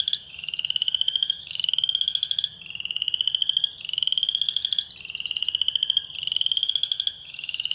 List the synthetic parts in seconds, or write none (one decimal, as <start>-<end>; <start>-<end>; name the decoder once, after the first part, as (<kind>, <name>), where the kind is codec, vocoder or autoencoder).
0.0-2.5 (autoencoder, DAC-VAE); 6.7-7.7